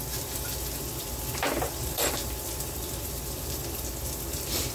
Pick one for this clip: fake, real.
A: fake